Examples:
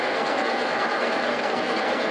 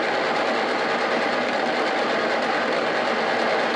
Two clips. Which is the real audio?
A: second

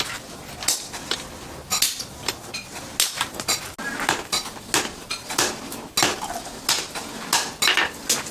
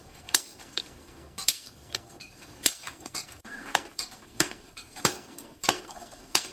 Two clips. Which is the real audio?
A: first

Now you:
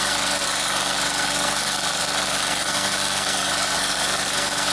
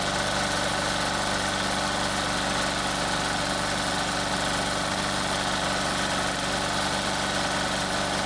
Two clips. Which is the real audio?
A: second